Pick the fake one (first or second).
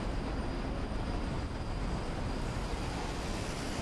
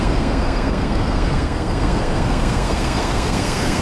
second